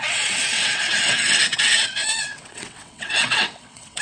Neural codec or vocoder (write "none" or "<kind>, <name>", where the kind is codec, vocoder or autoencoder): vocoder, WaveNeXt